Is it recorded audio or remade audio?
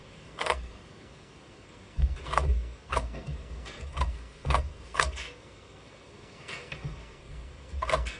remade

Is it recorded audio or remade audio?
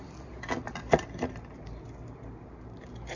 recorded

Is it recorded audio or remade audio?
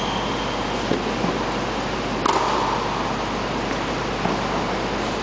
recorded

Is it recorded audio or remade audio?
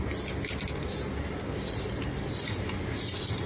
recorded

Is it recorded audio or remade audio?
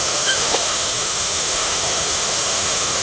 remade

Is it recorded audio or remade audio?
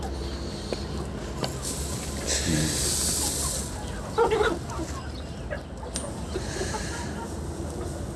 recorded